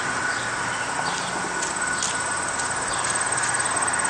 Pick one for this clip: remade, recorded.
recorded